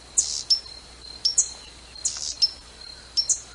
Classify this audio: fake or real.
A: real